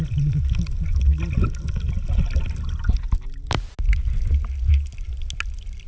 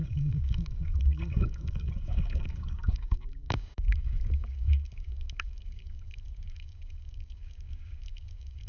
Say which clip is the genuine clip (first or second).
first